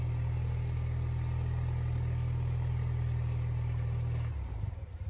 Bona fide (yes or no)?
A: yes